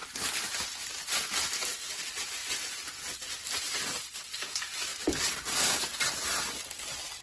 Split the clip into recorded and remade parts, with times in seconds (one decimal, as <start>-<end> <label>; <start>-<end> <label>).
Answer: 0.0-7.2 recorded